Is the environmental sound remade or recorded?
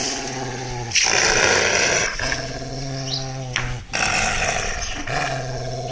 recorded